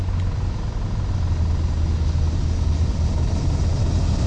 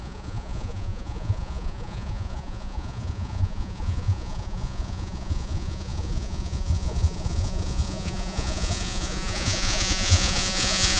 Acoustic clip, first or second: first